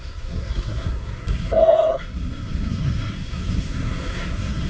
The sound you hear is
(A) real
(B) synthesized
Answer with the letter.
B